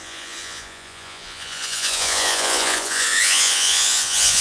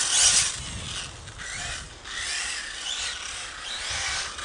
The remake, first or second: first